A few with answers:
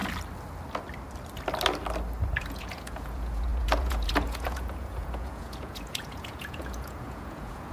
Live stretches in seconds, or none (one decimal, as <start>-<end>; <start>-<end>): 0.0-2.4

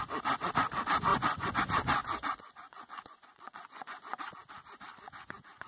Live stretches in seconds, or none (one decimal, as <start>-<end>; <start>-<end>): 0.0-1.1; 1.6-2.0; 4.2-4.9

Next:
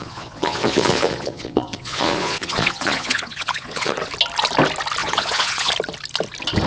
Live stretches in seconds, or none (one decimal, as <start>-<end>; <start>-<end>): 4.0-5.0; 5.7-6.7